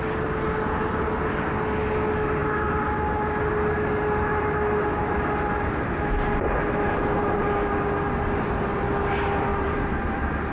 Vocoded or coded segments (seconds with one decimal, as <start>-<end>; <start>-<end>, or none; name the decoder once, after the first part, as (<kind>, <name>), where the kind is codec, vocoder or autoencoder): 9.5-10.5 (vocoder, BigVGAN v2)